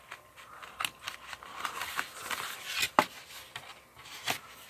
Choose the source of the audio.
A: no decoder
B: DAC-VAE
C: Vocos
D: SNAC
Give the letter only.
A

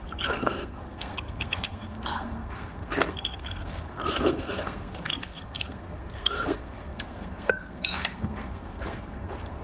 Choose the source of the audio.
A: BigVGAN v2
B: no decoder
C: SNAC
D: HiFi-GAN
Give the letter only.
C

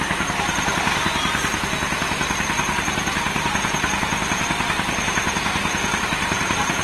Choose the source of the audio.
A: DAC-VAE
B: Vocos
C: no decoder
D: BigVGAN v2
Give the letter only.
D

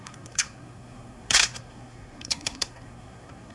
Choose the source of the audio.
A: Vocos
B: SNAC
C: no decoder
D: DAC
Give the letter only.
B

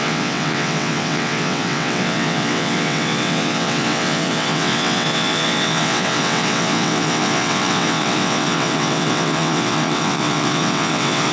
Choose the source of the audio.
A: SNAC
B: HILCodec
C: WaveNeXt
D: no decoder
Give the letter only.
C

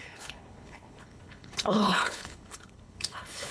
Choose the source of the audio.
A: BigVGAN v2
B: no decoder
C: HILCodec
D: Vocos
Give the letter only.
C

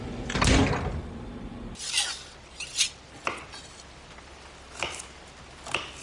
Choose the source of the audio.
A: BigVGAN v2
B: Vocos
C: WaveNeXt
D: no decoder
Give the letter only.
D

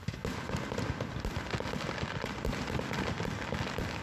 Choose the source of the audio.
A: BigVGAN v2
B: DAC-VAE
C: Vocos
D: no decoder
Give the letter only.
D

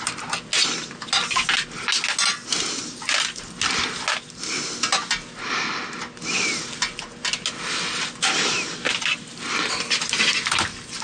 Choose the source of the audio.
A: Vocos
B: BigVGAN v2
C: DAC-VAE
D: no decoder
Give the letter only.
D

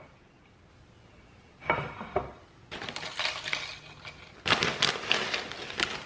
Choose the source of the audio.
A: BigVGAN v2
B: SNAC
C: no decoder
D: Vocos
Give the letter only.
C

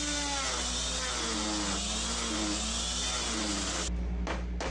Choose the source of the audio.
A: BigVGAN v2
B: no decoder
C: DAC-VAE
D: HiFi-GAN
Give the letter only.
B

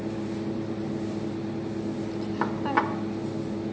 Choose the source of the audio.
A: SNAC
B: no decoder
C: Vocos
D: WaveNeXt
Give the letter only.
B